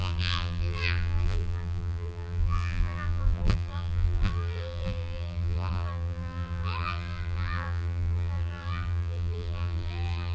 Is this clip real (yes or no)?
no